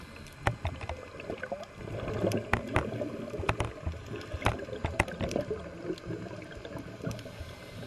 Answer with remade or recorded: recorded